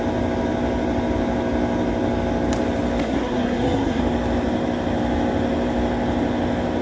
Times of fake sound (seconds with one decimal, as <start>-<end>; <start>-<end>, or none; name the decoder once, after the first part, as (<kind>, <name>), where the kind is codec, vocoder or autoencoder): 3.0-4.0 (codec, SNAC)